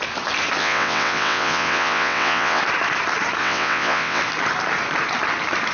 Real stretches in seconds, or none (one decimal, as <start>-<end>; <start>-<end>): 0.0-0.6; 2.6-3.4; 4.2-5.7